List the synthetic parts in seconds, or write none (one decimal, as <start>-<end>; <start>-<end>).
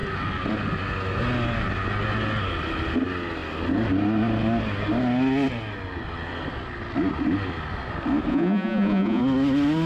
8.3-9.2